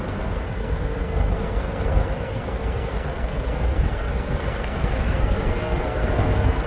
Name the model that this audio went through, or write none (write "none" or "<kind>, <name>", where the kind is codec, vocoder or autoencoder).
codec, SNAC